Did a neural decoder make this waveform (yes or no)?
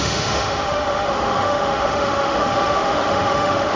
yes